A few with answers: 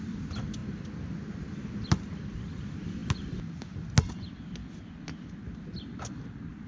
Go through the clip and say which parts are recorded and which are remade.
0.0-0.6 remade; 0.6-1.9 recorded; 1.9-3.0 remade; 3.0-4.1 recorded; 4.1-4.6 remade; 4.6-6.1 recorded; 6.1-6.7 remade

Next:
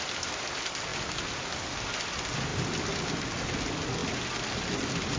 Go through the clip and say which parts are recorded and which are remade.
0.0-5.2 recorded

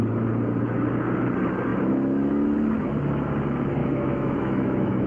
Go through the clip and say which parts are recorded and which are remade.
0.0-3.8 recorded; 3.8-5.1 remade

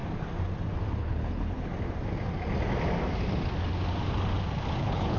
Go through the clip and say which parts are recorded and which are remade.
0.0-1.0 recorded; 1.0-1.7 remade; 1.7-4.8 recorded; 4.8-5.2 remade

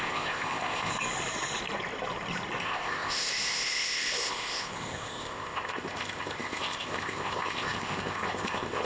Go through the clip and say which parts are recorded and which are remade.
0.0-0.9 remade; 0.9-2.6 recorded; 2.6-8.8 remade

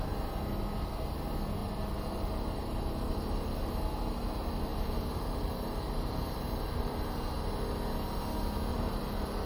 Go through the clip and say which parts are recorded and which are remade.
0.0-1.6 recorded; 1.6-3.7 remade; 3.7-4.7 recorded; 4.7-7.0 remade; 7.0-8.7 recorded; 8.7-9.5 remade

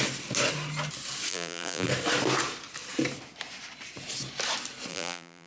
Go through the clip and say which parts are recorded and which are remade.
0.0-1.3 recorded; 1.3-1.9 remade; 1.9-4.9 recorded; 4.9-5.5 remade

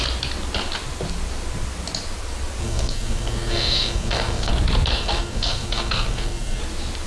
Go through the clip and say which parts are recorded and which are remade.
0.0-2.6 recorded; 2.6-4.5 remade; 4.5-4.9 recorded; 4.9-6.6 remade; 6.6-7.1 recorded